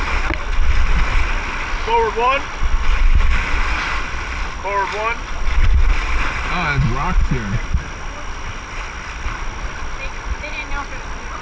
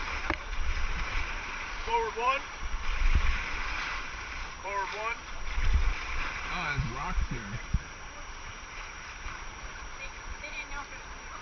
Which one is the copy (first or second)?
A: second